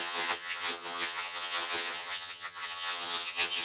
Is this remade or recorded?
remade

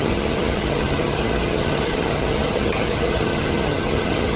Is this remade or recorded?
remade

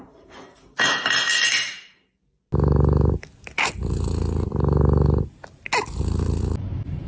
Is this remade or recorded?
recorded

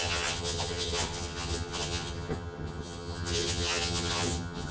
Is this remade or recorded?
remade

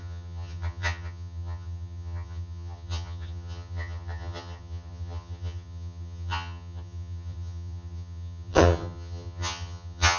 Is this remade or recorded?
remade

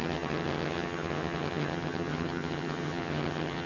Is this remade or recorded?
remade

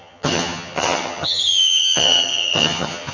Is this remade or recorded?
remade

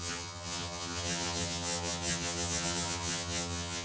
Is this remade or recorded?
remade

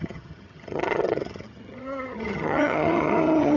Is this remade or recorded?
remade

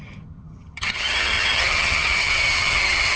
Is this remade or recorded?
remade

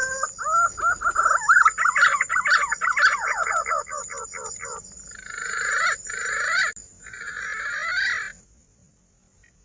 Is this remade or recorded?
recorded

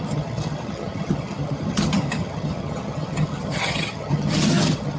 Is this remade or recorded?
remade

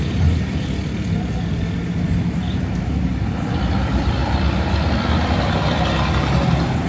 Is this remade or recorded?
recorded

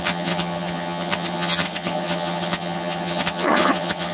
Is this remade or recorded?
remade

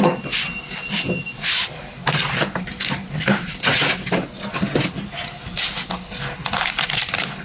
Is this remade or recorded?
recorded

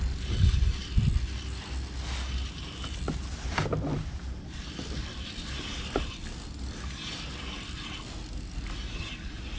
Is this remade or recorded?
recorded